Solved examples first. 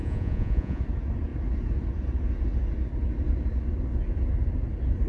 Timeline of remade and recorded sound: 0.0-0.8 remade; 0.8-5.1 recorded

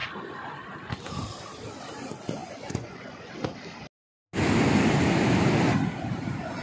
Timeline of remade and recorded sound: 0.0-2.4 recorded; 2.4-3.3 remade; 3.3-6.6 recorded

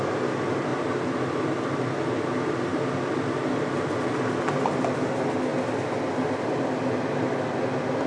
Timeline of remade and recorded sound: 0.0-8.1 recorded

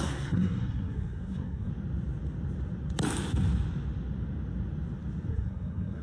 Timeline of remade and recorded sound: 0.0-1.7 remade; 1.7-5.3 recorded; 5.3-6.0 remade

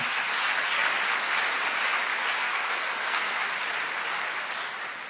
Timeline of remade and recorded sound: 0.0-2.4 recorded; 2.4-3.4 remade; 3.4-5.1 recorded